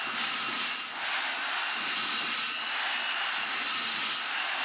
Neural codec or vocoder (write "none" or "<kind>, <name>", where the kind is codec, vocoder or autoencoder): none